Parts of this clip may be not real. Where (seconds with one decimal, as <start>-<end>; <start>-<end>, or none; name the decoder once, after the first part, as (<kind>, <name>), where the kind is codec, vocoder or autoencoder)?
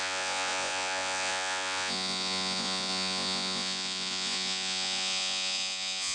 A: 0.0-6.1 (vocoder, Vocos)